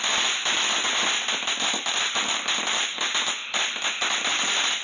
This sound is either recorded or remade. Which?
recorded